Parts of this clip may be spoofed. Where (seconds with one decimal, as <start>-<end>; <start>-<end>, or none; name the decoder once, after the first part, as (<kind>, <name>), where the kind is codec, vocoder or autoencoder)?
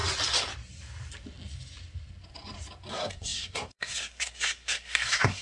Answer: 2.9-5.4 (codec, SNAC)